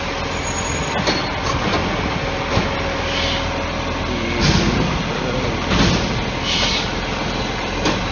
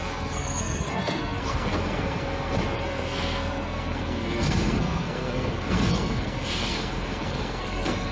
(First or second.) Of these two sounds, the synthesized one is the second